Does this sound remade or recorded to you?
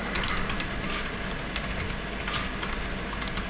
recorded